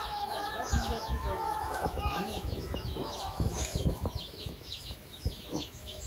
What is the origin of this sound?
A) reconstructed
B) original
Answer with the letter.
A